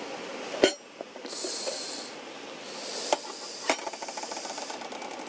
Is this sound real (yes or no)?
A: yes